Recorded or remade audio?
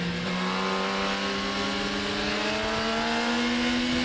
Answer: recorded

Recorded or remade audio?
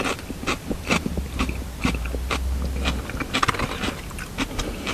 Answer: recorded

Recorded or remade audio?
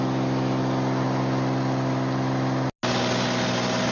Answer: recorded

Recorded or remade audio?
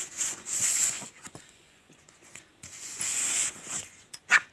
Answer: remade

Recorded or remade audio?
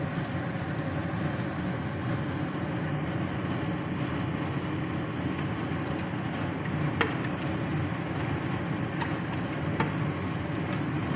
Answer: recorded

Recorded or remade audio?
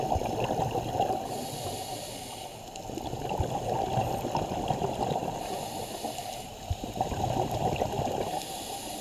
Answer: recorded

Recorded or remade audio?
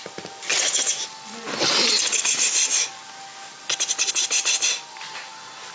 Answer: recorded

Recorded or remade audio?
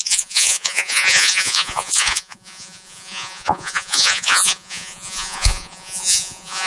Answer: remade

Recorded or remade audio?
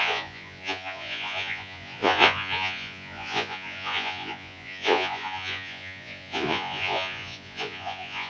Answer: remade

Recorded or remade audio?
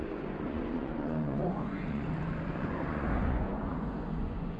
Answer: remade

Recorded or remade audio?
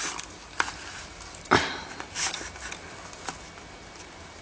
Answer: recorded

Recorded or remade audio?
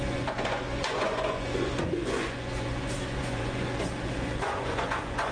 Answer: remade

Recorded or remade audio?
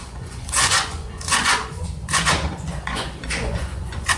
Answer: remade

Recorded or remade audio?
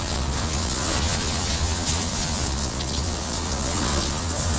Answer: remade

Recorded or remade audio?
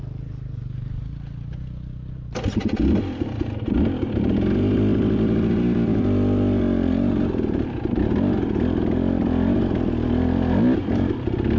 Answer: recorded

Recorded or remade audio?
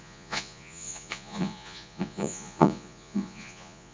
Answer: remade